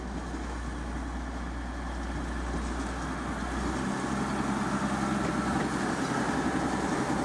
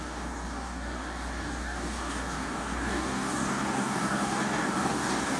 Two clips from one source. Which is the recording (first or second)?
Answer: first